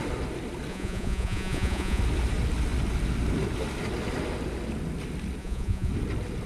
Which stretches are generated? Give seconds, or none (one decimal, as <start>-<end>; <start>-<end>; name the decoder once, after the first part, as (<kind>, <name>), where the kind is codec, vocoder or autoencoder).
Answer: 0.7-2.0 (vocoder, Vocos); 5.4-5.9